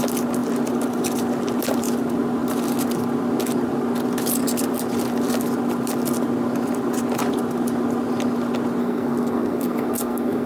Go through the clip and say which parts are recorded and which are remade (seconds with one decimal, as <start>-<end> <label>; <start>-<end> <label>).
0.0-8.8 recorded; 8.8-10.5 remade